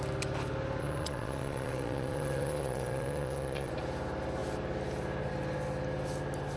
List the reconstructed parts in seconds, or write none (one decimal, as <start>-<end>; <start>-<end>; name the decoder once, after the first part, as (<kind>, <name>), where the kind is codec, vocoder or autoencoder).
0.8-3.7 (vocoder, Vocos)